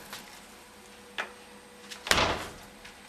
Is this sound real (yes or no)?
yes